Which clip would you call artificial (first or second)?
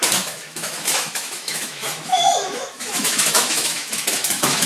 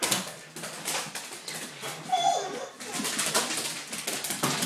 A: first